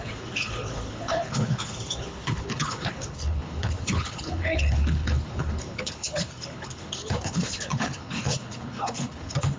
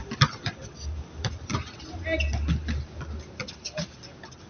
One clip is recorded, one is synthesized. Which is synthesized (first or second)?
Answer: first